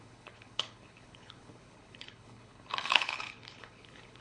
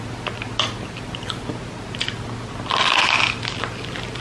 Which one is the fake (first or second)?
first